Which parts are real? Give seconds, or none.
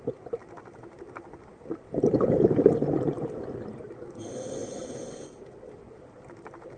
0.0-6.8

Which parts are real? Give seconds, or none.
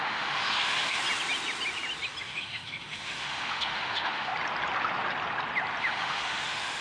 1.0-2.2; 4.3-5.8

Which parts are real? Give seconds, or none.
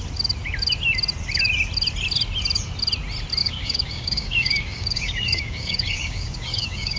0.0-3.4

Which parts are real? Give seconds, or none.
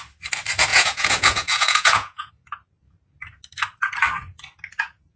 0.0-0.7; 2.3-5.2